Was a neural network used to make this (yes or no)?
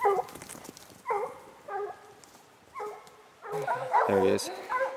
no